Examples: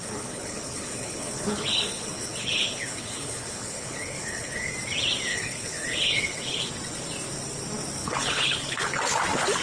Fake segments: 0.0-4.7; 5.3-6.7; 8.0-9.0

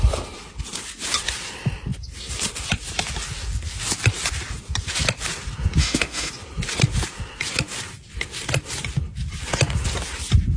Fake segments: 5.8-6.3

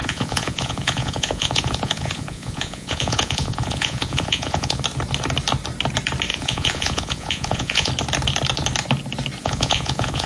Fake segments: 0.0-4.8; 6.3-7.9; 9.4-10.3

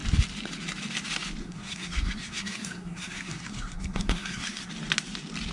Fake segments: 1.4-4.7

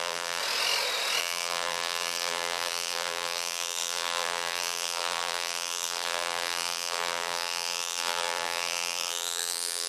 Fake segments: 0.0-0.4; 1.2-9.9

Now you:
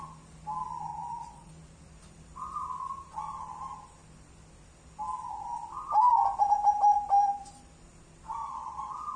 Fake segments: 0.9-1.5; 8.4-9.2

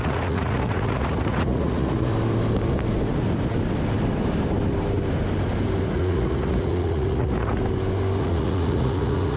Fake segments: 0.0-2.1; 5.9-7.6; 8.2-9.4

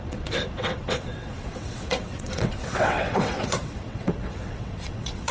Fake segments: 0.0-5.3